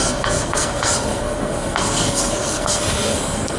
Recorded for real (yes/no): no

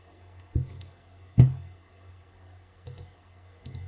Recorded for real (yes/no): no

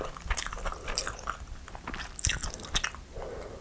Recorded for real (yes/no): yes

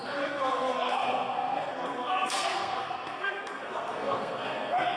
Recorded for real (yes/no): no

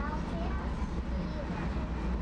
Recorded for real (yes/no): yes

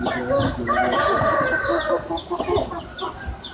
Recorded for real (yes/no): yes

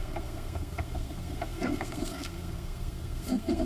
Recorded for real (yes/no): no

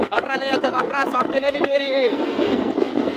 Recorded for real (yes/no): no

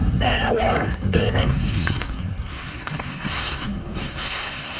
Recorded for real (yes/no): no